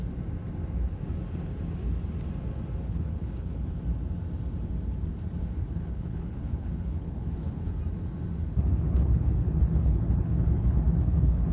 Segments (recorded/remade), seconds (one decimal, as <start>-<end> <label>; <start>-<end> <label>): 0.0-2.8 recorded; 2.8-3.8 remade; 3.8-5.4 recorded; 5.4-7.8 remade; 7.8-8.4 recorded; 8.4-11.5 remade